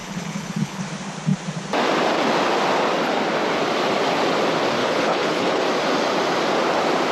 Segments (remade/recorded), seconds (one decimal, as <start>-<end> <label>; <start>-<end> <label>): 0.0-0.8 remade; 0.8-4.8 recorded; 4.8-5.6 remade; 5.6-7.1 recorded